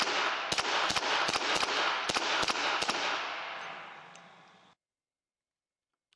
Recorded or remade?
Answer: recorded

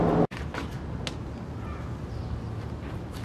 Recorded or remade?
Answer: recorded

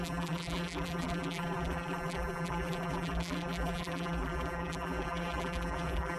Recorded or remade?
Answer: remade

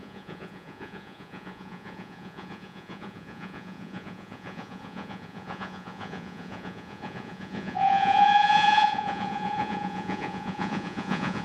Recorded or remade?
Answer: remade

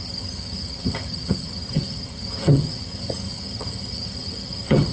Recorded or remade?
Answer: remade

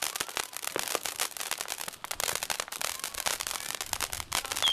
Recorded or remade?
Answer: recorded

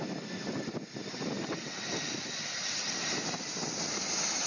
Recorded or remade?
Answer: recorded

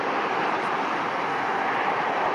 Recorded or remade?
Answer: recorded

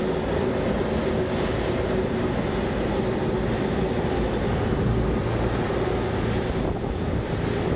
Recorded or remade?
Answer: recorded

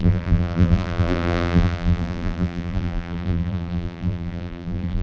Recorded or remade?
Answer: remade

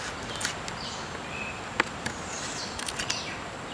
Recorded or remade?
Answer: recorded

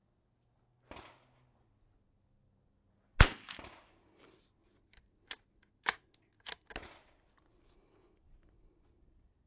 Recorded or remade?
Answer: recorded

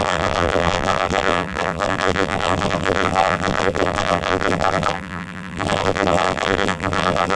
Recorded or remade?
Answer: remade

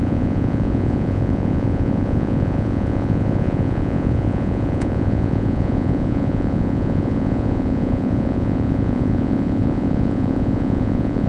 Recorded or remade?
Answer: remade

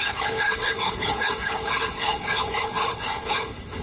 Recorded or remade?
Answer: remade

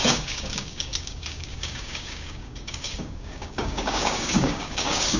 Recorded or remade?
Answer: remade